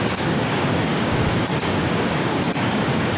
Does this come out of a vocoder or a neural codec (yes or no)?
yes